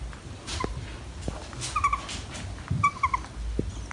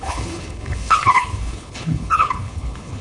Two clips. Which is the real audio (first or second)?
first